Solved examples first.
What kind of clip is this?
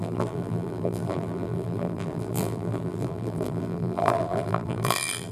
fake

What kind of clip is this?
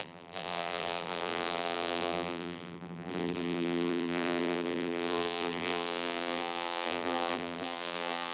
fake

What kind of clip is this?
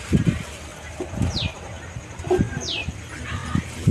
fake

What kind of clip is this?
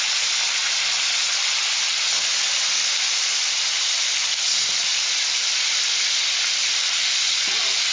real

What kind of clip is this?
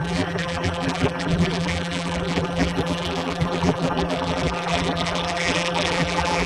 fake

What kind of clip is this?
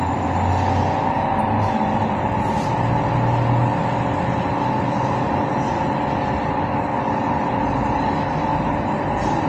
real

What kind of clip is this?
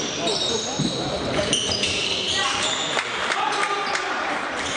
fake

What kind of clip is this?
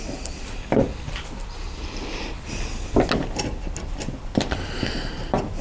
real